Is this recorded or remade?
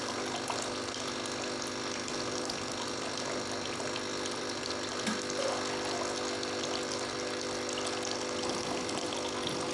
recorded